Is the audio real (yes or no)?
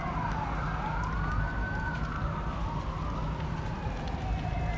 yes